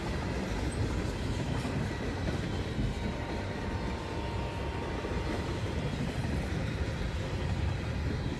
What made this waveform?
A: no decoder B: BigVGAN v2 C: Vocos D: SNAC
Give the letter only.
A